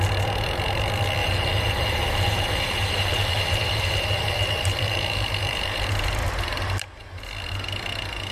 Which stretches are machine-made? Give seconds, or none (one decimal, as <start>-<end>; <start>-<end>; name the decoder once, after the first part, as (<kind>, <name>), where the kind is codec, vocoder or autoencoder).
1.2-5.9 (vocoder, BigVGAN v2)